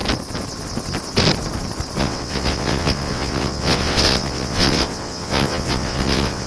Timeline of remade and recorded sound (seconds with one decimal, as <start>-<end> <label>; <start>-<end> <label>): 0.0-2.0 recorded; 2.0-6.5 remade

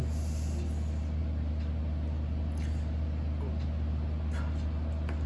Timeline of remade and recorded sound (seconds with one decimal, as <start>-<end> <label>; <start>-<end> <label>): 0.0-5.3 recorded

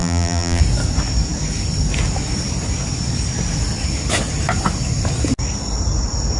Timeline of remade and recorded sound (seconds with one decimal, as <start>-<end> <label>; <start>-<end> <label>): 0.0-0.6 remade; 0.6-6.4 recorded

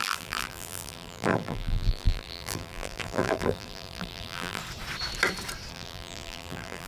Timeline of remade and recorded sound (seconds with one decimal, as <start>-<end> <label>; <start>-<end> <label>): 0.0-4.6 remade; 4.6-5.7 recorded; 5.7-6.9 remade

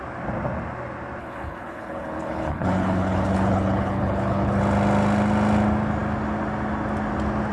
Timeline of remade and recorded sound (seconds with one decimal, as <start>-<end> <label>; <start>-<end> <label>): 0.0-1.2 recorded; 1.2-4.6 remade; 4.6-7.5 recorded

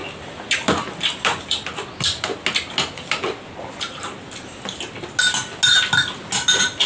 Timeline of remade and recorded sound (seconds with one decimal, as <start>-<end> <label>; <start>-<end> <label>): 0.0-6.9 recorded